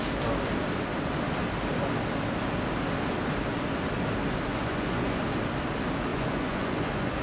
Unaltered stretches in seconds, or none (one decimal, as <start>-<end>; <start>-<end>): 0.0-4.5; 5.2-6.1